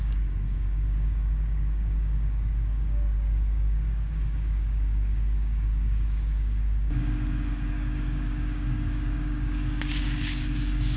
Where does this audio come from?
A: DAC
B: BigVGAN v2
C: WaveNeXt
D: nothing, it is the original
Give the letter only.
A